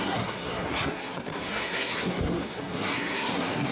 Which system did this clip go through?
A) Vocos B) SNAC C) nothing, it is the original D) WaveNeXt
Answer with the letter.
B